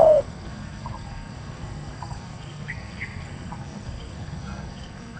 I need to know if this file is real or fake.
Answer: fake